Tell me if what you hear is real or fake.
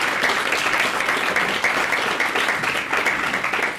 real